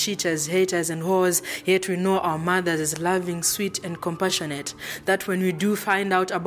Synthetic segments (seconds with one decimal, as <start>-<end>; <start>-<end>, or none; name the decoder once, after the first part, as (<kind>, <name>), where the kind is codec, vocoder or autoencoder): none